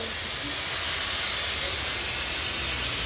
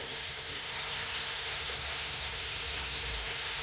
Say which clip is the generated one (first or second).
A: second